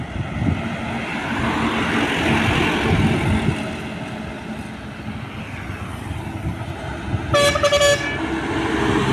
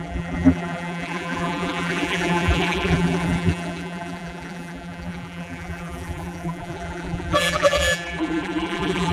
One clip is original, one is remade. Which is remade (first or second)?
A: second